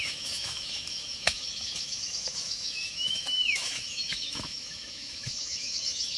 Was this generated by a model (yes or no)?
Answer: yes